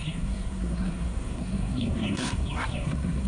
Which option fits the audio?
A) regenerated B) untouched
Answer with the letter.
A